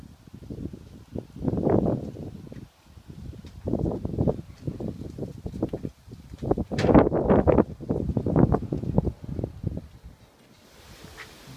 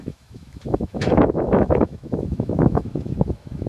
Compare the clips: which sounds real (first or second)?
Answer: first